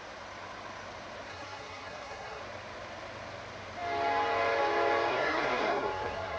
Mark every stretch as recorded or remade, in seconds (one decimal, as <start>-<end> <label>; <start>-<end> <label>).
0.0-1.3 recorded; 1.3-2.4 remade; 2.4-5.1 recorded; 5.1-6.4 remade